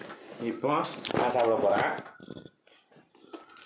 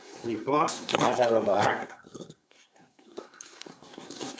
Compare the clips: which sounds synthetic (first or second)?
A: second